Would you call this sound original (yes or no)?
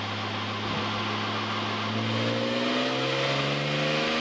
yes